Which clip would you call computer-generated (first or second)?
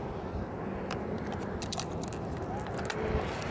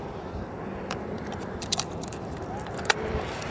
second